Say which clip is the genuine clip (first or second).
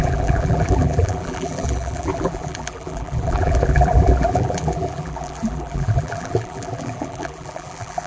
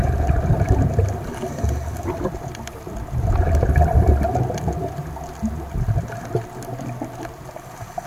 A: second